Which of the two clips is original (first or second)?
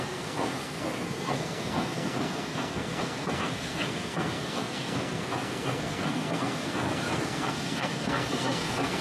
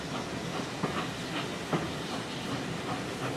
second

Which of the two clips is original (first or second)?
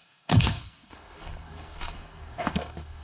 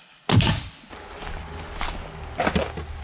second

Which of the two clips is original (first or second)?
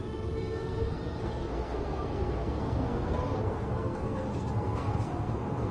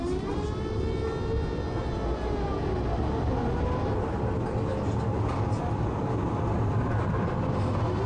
second